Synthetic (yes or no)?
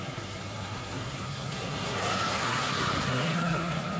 yes